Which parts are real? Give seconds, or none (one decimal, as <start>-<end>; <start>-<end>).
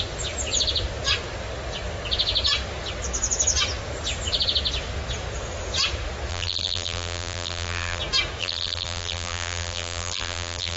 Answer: 0.0-6.3; 8.0-8.4